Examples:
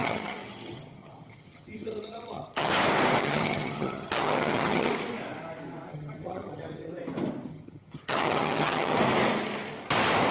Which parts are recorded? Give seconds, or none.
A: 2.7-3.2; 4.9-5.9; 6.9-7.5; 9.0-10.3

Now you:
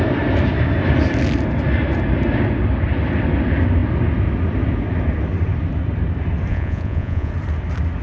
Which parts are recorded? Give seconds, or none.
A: 0.0-6.5; 7.3-8.0

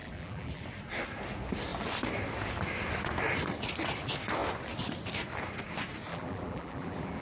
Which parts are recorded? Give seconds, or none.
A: 0.6-6.1